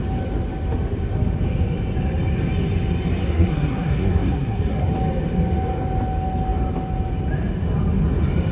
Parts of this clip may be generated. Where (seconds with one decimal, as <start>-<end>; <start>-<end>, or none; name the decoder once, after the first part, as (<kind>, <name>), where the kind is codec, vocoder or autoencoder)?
3.2-4.9 (codec, SNAC)